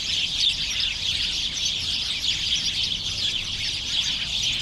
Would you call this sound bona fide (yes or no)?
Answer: no